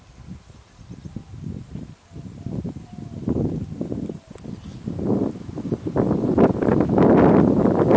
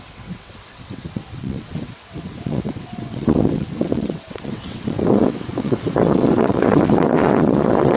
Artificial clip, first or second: second